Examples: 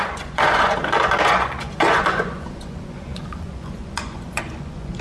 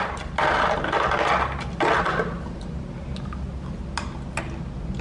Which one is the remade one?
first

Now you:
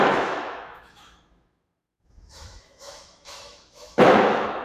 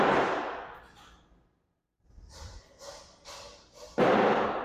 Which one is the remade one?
first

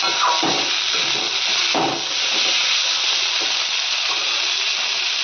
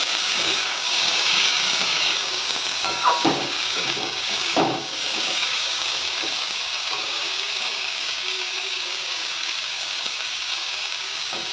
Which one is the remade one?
second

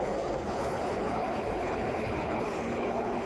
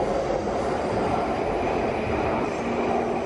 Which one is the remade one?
first